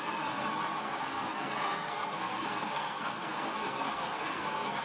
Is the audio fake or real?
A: fake